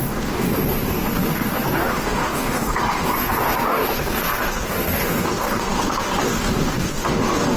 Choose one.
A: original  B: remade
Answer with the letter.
B